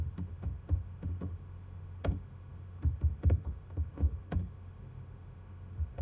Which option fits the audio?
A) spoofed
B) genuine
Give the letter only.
A